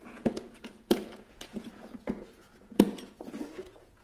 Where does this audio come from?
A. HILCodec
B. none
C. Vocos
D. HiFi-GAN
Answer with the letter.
C